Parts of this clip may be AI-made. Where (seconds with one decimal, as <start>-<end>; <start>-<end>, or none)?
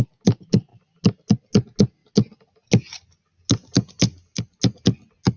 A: none